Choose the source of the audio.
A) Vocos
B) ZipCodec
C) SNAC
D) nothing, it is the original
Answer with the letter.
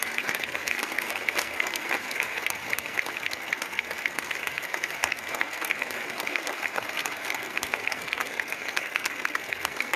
C